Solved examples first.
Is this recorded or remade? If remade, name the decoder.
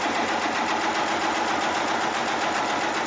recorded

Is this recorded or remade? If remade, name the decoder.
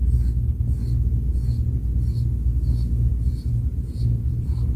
recorded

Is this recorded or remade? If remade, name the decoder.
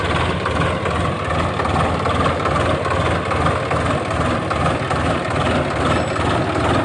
recorded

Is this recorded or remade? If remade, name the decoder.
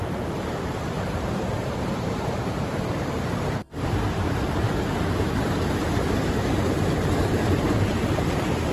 remade, vocoder, BigVGAN v2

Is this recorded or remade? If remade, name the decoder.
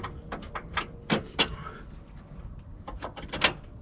recorded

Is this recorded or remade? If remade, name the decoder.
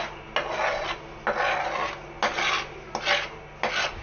recorded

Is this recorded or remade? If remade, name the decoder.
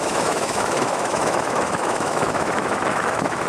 remade, autoencoder, DAC-VAE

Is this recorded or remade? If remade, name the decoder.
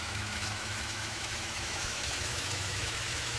remade, autoencoder, DAC-VAE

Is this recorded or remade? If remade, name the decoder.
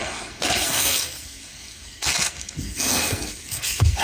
remade, codec, SNAC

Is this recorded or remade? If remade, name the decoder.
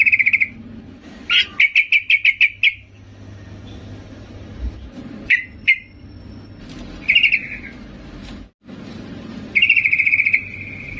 recorded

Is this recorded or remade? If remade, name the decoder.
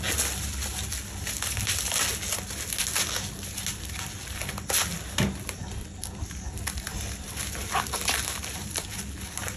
recorded